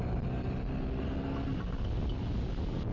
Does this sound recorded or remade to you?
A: recorded